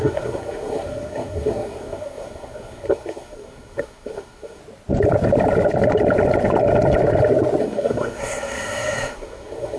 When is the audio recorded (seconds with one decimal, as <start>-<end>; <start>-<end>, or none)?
4.6-7.6